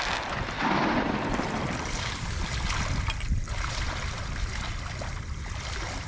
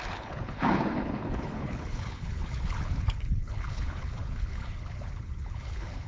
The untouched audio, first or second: first